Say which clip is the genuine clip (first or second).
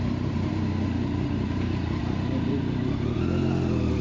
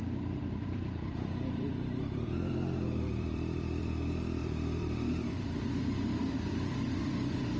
first